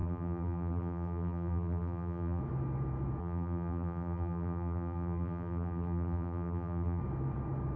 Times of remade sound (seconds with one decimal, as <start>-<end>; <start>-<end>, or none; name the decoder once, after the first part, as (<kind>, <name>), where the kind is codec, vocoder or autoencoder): 0.0-2.4 (vocoder, BigVGAN v2); 3.2-7.0